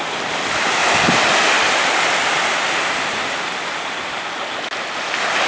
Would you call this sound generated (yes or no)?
no